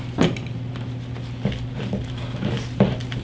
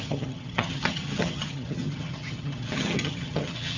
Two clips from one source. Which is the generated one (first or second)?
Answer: second